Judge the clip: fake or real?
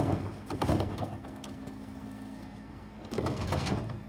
fake